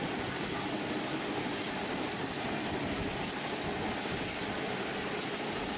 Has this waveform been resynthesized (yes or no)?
yes